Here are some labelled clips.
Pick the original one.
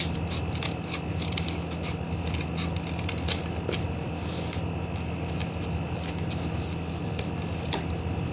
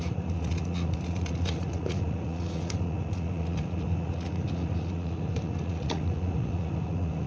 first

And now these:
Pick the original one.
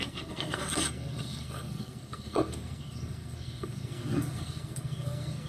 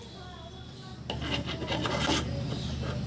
second